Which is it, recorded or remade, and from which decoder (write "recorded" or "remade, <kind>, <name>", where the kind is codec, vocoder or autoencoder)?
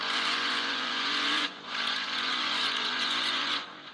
remade, vocoder, Vocos